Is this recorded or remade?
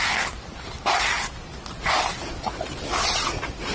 recorded